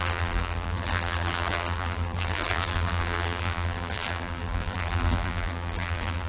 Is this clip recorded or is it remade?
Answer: remade